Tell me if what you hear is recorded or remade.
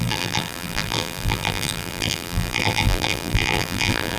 remade